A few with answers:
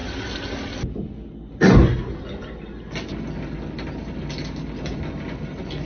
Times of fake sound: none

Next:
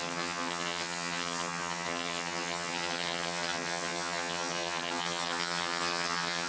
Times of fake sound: 0.0-6.5 (vocoder, HiFi-GAN)

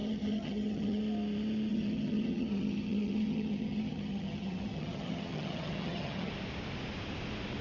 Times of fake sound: 0.0-1.0 (vocoder, HiFi-GAN); 1.7-6.3